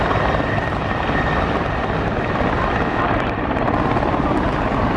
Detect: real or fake fake